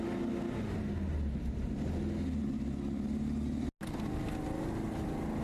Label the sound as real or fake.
real